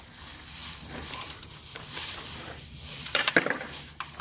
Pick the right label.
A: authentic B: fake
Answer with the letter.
B